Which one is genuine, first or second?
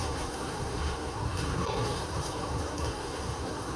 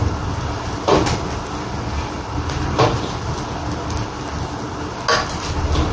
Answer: second